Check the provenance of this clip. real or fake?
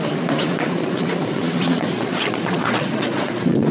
fake